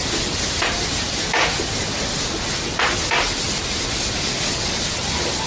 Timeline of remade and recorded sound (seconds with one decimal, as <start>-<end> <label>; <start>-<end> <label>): 0.0-5.5 recorded